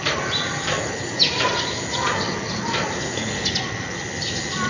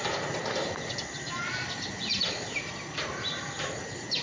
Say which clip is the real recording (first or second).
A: first